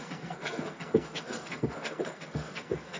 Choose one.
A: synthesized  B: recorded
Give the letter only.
A